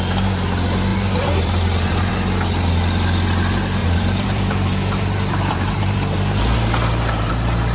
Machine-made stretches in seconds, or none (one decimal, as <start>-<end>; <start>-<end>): 0.9-2.1; 3.8-7.3